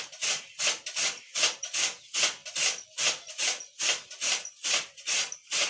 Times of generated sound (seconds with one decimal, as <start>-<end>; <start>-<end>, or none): none